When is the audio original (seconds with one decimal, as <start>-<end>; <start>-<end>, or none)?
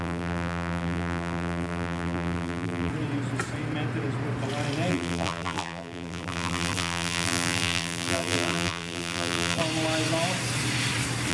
2.9-4.9; 9.6-11.3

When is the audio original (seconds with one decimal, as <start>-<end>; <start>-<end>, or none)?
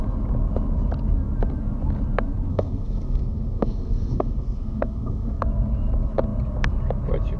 0.0-2.5; 5.4-7.4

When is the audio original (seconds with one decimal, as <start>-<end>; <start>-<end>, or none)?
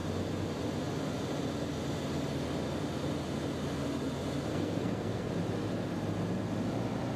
0.0-4.5; 5.3-7.2